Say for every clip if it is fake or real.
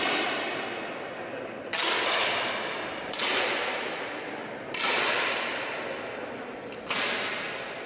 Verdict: real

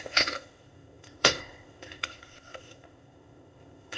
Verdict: fake